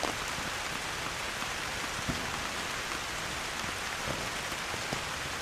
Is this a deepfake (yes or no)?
no